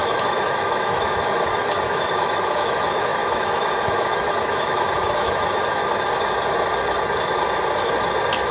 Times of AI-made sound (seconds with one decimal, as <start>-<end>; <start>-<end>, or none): 0.0-5.8